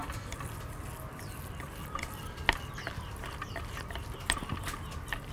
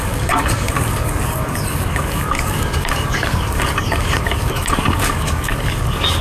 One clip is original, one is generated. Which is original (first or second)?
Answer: first